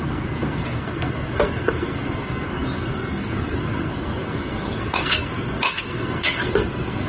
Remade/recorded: remade